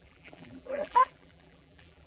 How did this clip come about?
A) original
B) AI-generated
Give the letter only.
B